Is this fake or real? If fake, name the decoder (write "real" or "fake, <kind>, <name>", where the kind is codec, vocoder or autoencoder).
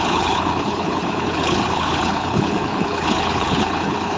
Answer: fake, codec, HILCodec